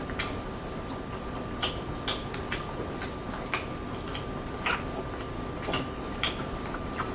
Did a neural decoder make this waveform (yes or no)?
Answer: no